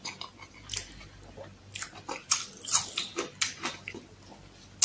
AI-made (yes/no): no